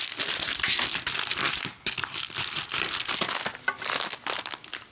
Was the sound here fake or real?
real